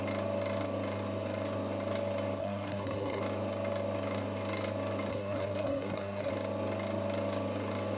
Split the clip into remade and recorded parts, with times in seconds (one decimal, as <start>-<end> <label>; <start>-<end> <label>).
0.0-2.4 recorded; 2.4-3.2 remade; 3.2-5.1 recorded; 5.1-6.3 remade; 6.3-8.0 recorded